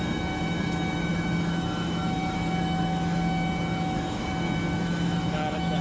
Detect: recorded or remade remade